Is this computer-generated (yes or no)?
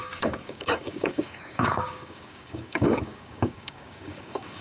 yes